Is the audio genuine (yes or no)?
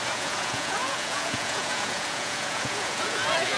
no